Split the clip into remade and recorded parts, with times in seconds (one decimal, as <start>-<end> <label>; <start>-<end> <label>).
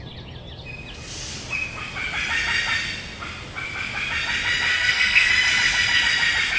0.0-4.7 recorded; 4.7-5.3 remade; 5.3-6.6 recorded